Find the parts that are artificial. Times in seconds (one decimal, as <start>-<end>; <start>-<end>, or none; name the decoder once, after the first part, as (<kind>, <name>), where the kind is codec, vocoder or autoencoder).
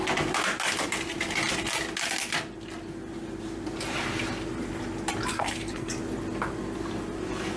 5.3-5.9 (codec, SNAC)